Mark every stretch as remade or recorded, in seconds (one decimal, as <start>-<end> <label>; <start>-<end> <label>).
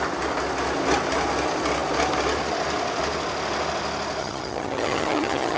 0.0-4.2 recorded; 4.2-5.6 remade